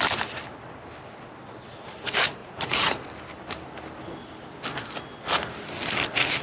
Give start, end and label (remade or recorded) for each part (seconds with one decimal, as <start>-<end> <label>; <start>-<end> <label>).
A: 0.0-2.4 recorded; 2.4-3.1 remade; 3.1-6.4 recorded